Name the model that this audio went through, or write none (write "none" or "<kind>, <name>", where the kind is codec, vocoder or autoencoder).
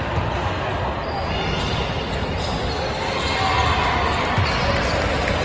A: none